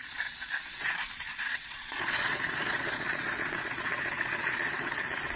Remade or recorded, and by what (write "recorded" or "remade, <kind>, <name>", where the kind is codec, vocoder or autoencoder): remade, vocoder, Vocos